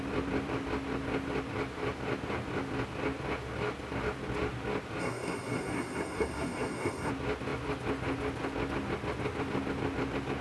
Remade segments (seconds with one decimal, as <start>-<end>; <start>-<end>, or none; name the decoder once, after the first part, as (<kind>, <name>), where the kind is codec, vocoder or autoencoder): 5.0-7.1 (codec, SNAC)